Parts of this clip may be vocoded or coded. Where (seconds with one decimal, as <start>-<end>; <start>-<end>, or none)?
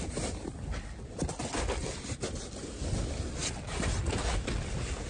none